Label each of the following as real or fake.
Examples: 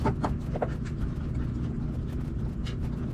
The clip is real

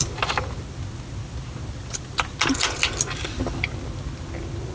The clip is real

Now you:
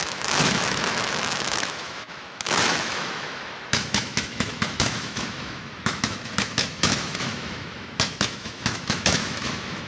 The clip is fake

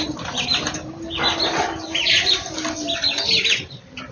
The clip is real